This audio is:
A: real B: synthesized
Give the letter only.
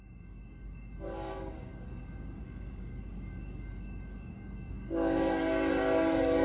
B